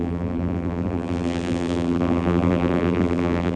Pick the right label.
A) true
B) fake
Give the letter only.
B